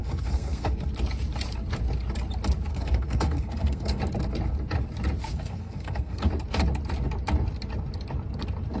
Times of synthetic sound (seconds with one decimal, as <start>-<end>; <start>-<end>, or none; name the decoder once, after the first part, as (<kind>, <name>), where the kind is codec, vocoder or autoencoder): 0.0-0.9 (codec, SNAC); 2.7-4.0; 5.3-6.3